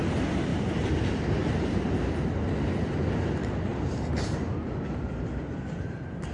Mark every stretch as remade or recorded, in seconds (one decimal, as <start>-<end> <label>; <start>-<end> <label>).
0.0-0.5 recorded; 0.5-1.5 remade; 1.5-3.7 recorded; 3.7-4.5 remade; 4.5-6.3 recorded